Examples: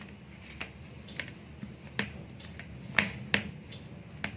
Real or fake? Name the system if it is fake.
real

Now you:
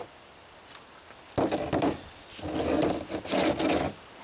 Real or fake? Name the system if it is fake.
real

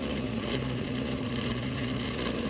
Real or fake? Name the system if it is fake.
fake, vocoder, Vocos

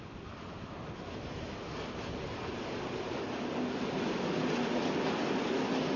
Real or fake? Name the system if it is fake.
real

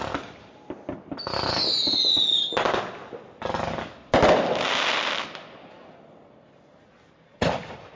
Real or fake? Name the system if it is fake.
real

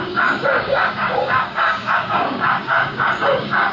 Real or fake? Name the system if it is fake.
fake, codec, DAC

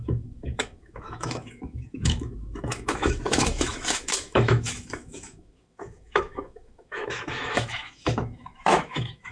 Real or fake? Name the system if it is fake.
fake, autoencoder, DAC-VAE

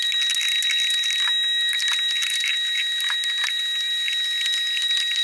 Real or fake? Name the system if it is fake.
real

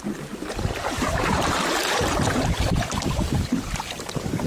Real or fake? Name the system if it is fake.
fake, vocoder, BigVGAN v2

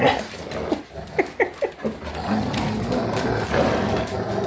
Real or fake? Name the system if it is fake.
real